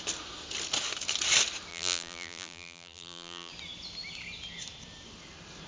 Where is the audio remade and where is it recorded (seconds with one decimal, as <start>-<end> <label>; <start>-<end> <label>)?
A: 0.0-1.7 recorded; 1.7-3.5 remade; 3.5-5.7 recorded